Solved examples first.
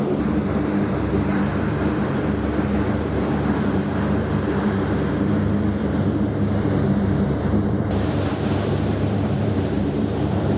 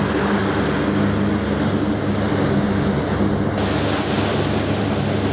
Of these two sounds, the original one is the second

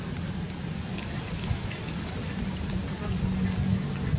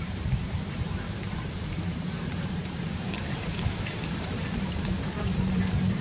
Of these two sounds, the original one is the first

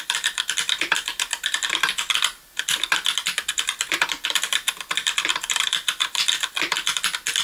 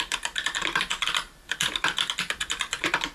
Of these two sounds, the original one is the first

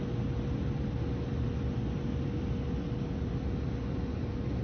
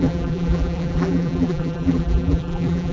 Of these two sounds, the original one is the first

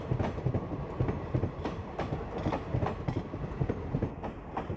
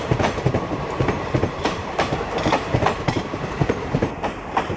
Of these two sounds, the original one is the first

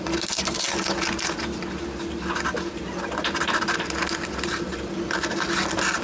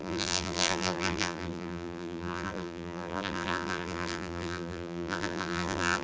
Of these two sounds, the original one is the first